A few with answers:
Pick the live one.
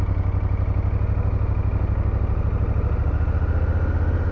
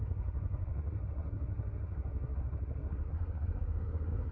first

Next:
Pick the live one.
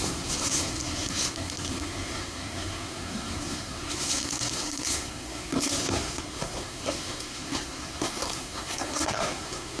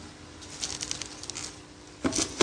second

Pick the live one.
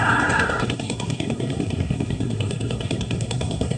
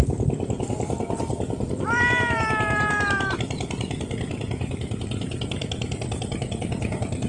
second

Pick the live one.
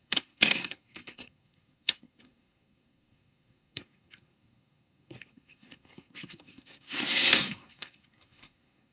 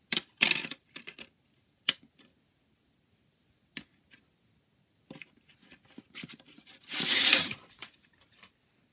second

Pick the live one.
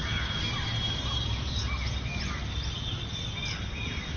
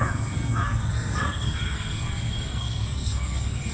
first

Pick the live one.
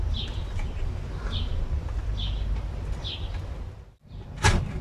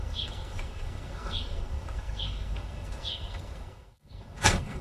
first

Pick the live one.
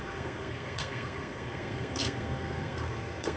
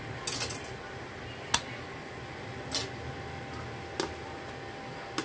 second